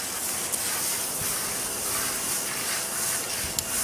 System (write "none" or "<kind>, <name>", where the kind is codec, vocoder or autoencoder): none